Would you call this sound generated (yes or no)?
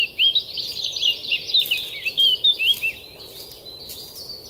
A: no